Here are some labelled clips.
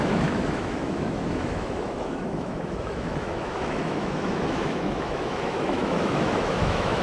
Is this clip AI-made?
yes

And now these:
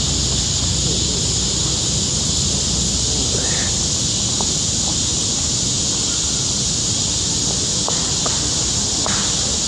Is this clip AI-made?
no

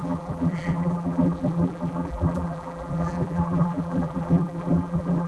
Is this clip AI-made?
yes